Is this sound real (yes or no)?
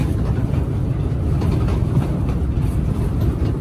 no